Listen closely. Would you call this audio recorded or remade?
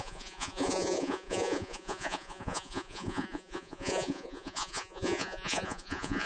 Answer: remade